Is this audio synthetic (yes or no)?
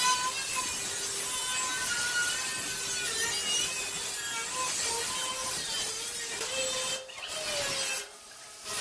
no